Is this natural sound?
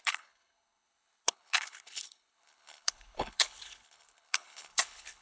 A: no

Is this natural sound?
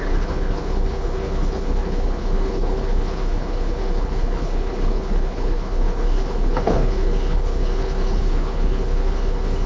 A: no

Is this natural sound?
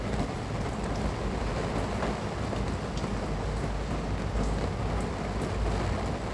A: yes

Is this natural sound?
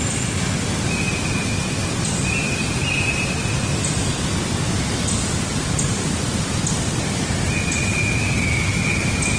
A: yes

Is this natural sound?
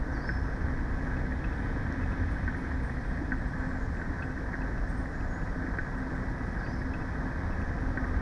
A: yes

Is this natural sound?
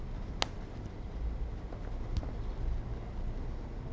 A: yes